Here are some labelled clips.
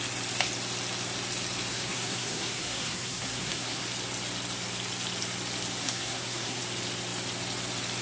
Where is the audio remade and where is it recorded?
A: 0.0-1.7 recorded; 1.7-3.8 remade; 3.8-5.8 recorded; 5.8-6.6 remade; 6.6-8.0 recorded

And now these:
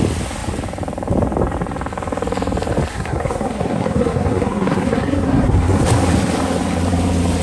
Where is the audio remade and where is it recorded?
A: 0.0-2.9 recorded; 2.9-5.8 remade; 5.8-7.4 recorded

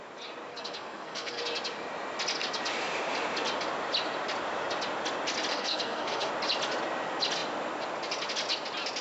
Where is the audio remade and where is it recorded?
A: 0.0-0.5 recorded; 0.5-1.4 remade; 1.4-5.5 recorded; 5.5-6.3 remade; 6.3-9.0 recorded

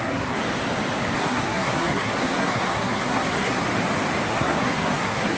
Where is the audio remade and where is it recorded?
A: 0.0-0.4 remade; 0.4-1.2 recorded; 1.2-3.6 remade; 3.6-4.3 recorded; 4.3-5.4 remade

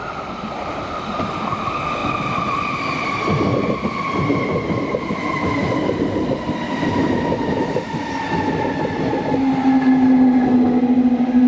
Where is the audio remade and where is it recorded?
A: 0.0-11.5 recorded

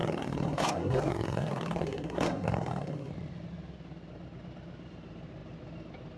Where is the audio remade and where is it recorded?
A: 0.0-3.1 remade; 3.1-6.2 recorded

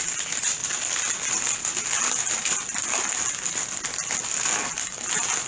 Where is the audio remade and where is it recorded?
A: 0.0-5.5 recorded